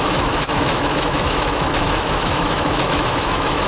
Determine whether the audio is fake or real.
fake